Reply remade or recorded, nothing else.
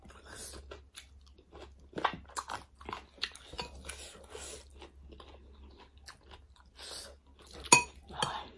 recorded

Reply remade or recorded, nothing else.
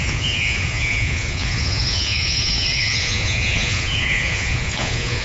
remade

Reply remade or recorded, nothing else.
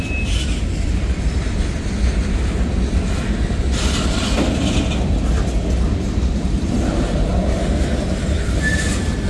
recorded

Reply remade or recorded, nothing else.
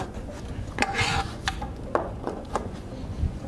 remade